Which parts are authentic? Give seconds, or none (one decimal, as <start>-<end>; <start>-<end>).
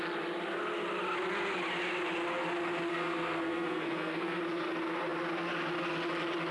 0.0-2.9; 4.4-6.5